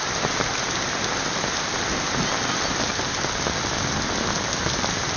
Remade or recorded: recorded